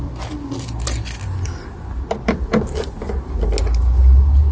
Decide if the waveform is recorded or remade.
recorded